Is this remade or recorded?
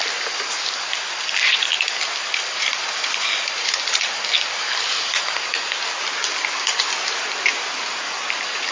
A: recorded